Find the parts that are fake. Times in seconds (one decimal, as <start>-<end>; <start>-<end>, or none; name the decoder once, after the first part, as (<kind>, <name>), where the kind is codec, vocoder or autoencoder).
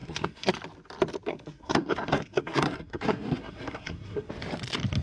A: 0.0-0.5 (codec, SNAC); 1.3-4.3